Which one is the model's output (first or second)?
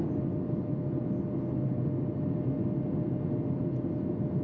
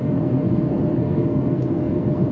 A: second